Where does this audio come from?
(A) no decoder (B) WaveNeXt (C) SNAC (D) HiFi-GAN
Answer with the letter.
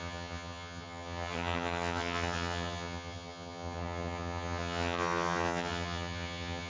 D